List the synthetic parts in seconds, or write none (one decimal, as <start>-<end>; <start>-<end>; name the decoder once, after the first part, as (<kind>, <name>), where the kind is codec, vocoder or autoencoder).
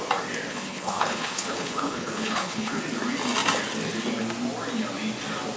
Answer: 0.5-2.8 (codec, HILCodec)